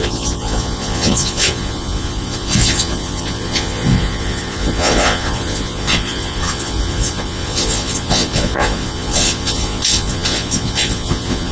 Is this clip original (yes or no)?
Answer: no